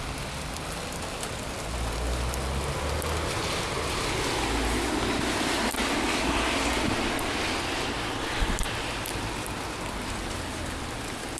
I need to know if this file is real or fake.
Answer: real